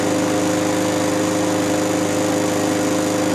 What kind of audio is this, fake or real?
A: real